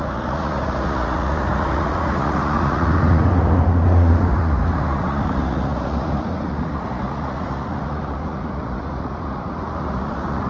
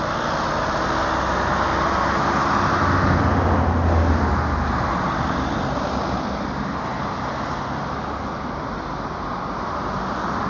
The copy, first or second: first